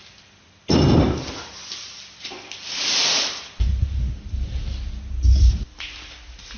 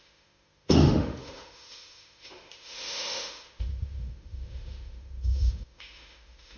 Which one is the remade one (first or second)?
second